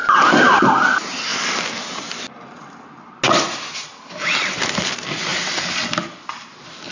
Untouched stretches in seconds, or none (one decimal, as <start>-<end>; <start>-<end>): 0.0-6.9